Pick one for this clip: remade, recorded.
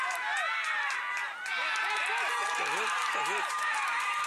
recorded